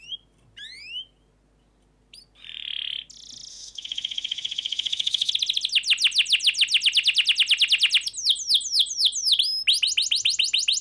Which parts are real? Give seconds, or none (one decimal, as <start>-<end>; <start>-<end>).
0.0-3.5; 5.3-10.8